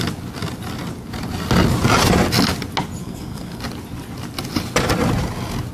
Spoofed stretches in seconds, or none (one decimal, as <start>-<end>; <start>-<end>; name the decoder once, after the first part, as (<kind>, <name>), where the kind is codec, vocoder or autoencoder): 3.0-3.6 (codec, SNAC)